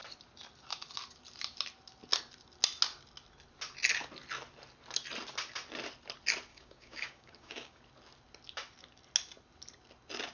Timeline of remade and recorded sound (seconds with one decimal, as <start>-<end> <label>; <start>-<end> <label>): 0.0-6.5 recorded; 6.5-7.8 remade; 7.8-10.3 recorded